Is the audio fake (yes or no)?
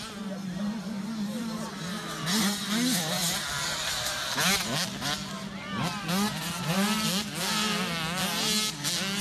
no